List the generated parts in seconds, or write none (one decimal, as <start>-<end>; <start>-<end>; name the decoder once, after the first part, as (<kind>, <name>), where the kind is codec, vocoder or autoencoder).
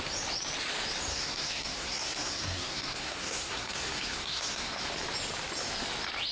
1.1-4.9 (codec, SNAC)